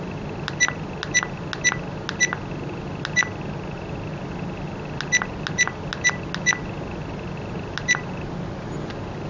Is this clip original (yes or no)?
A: yes